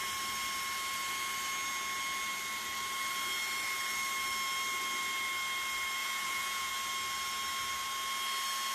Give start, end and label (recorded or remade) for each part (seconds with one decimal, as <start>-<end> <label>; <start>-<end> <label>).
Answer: 0.0-6.0 recorded; 6.0-6.7 remade; 6.7-8.7 recorded